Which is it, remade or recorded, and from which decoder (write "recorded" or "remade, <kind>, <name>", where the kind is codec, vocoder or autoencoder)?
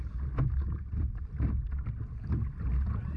recorded